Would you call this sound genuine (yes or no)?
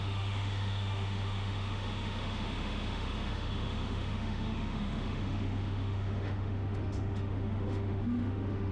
no